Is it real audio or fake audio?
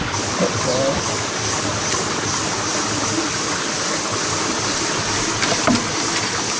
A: real